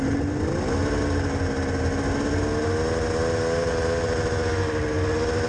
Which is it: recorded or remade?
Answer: recorded